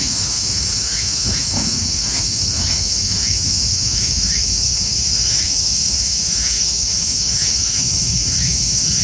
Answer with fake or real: fake